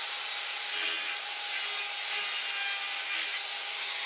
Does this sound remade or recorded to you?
recorded